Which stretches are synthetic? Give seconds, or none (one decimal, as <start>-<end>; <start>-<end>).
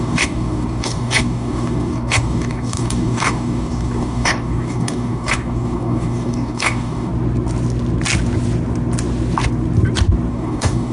0.0-7.1; 10.3-10.9